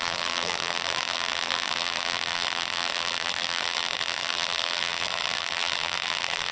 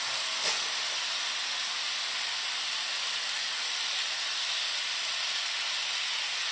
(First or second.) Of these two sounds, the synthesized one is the first